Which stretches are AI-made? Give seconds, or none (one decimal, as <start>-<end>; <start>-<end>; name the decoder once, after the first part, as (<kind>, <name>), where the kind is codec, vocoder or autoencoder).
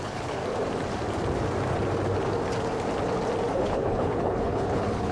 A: 0.0-0.4 (codec, HILCodec); 3.5-5.1